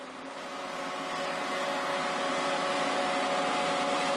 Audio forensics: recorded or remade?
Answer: recorded